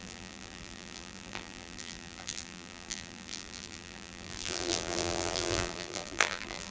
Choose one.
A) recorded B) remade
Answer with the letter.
B